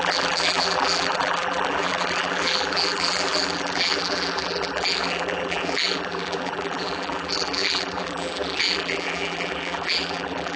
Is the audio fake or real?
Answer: fake